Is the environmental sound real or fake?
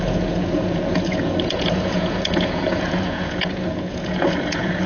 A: fake